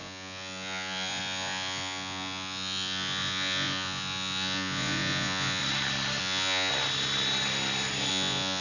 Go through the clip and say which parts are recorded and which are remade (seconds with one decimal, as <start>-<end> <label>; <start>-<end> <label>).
0.0-5.6 remade; 5.6-6.2 recorded; 6.2-6.7 remade; 6.7-8.1 recorded; 8.1-8.6 remade